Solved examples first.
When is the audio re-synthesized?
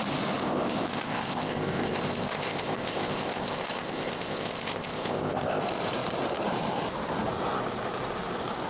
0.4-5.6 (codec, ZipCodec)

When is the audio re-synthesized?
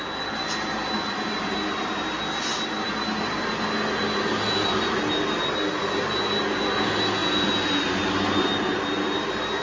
none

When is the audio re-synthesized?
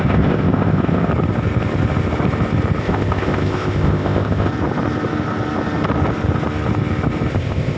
0.0-1.1 (codec, ZipCodec); 2.8-4.5; 7.3-7.8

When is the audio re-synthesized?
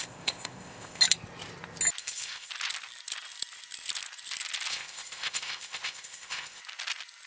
0.0-1.0 (codec, ZipCodec); 2.0-2.5; 4.7-6.6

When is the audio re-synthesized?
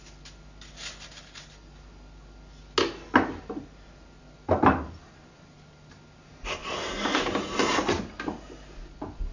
none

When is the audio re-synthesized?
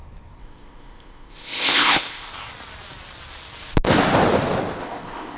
0.4-2.3 (codec, ZipCodec); 4.8-5.4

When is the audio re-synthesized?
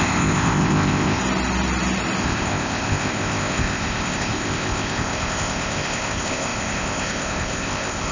0.0-1.2 (codec, ZipCodec); 2.2-8.1